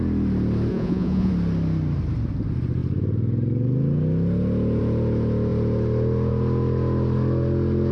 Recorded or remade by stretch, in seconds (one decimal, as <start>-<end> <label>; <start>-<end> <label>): 0.0-0.7 recorded; 0.7-1.3 remade; 1.3-7.9 recorded